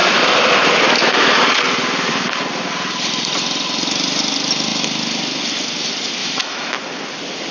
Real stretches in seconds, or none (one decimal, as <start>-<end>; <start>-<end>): 0.0-6.2; 6.7-7.5